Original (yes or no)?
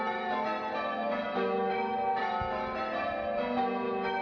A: yes